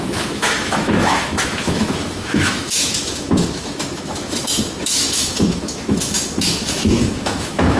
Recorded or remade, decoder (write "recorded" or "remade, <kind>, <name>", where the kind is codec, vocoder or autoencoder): remade, autoencoder, DAC-VAE